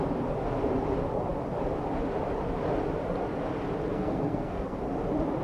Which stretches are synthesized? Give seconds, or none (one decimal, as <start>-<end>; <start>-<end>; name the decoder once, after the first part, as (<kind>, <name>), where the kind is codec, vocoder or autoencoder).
3.9-4.8 (codec, SNAC)